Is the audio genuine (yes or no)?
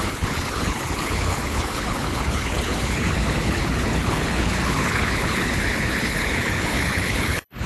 no